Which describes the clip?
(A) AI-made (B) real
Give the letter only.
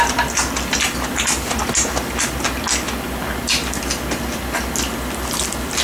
B